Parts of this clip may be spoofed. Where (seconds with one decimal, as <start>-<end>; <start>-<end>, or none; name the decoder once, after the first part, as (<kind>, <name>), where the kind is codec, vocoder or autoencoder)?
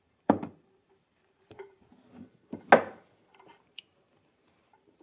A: 0.0-1.9 (vocoder, BigVGAN v2); 3.5-5.0